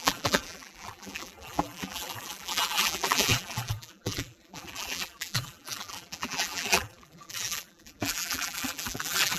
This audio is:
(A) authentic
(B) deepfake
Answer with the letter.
B